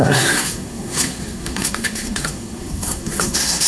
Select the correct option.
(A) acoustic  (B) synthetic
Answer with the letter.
B